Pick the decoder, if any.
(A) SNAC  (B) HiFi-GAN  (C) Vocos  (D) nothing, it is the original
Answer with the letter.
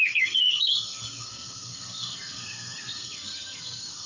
A